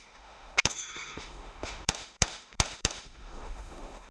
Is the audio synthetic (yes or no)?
yes